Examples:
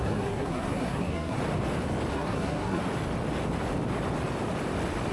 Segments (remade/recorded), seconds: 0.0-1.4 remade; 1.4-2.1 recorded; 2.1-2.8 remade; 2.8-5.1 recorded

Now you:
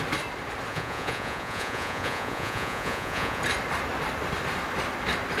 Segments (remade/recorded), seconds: 0.0-0.7 recorded; 0.7-3.4 remade; 3.4-5.4 recorded

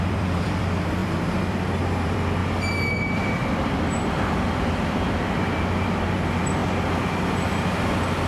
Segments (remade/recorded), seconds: 0.0-2.4 remade; 2.4-3.8 recorded; 3.8-6.6 remade; 6.6-8.3 recorded

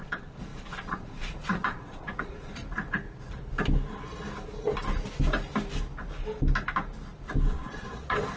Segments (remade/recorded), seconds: 0.0-2.6 remade; 2.6-7.5 recorded; 7.5-8.4 remade

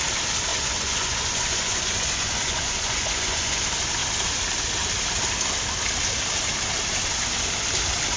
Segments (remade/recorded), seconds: 0.0-0.5 recorded; 0.5-3.6 remade; 3.6-8.2 recorded

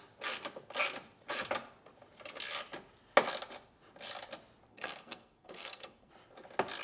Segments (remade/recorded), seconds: 0.0-4.7 recorded; 4.7-6.1 remade; 6.1-6.8 recorded

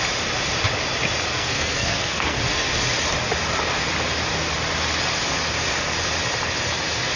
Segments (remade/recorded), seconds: 0.0-1.3 recorded; 1.3-2.4 remade; 2.4-7.2 recorded

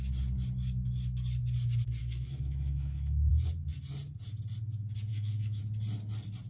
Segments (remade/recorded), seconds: 0.0-2.0 recorded; 2.0-3.3 remade; 3.3-5.1 recorded; 5.1-5.6 remade; 5.6-6.5 recorded